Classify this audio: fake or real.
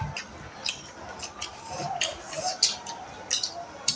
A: real